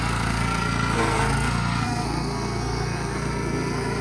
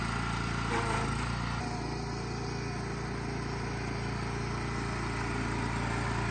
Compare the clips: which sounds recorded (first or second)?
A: second